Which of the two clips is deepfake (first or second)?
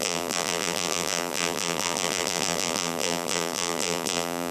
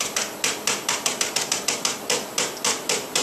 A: first